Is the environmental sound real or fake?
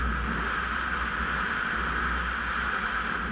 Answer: real